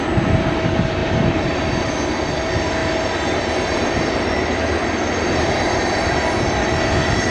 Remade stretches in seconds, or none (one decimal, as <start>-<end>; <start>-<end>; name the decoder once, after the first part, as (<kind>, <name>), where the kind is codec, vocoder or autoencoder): 1.0-1.6 (vocoder, BigVGAN v2); 2.8-6.1